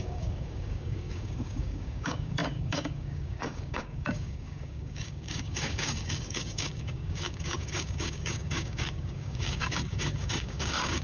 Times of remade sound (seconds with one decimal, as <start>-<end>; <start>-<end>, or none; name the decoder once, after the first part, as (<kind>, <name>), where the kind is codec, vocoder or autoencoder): 0.0-11.0 (codec, DAC)